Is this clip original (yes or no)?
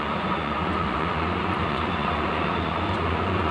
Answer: no